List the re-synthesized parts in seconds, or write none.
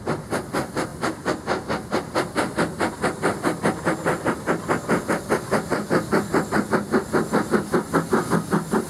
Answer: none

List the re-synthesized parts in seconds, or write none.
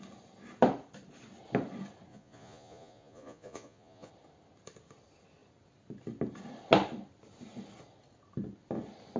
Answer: 2.1-4.1 (vocoder, Vocos)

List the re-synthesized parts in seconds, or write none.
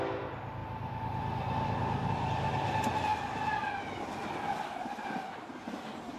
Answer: none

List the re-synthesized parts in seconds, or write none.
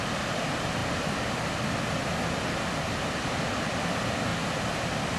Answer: none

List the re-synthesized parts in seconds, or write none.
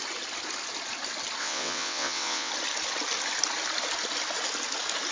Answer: 1.4-2.5 (vocoder, WaveNeXt)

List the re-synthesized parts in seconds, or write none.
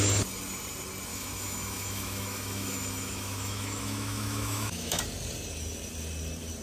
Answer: 1.1-5.0 (autoencoder, DAC-VAE)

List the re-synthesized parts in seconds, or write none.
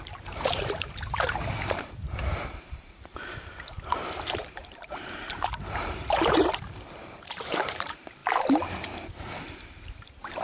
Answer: 0.0-10.4 (vocoder, BigVGAN v2)